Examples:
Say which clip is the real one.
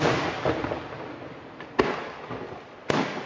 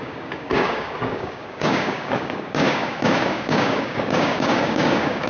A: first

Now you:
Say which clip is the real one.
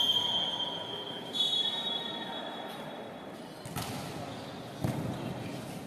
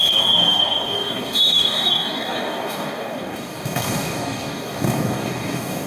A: first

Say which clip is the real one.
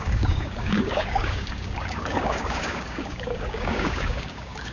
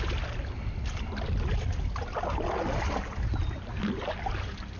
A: second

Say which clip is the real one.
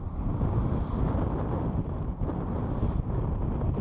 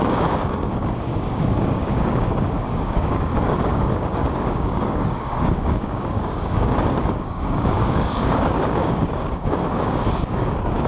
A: first